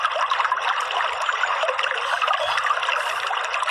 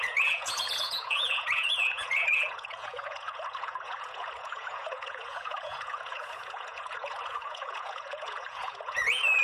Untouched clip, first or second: first